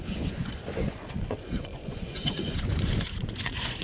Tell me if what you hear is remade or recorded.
remade